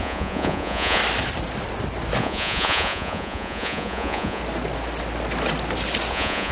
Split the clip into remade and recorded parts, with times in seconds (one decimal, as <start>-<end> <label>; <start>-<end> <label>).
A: 0.0-1.0 remade; 1.0-2.2 recorded; 2.2-4.4 remade; 4.4-6.1 recorded; 6.1-6.5 remade